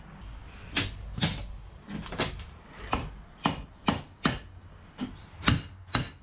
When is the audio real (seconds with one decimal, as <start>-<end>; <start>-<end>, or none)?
0.0-6.2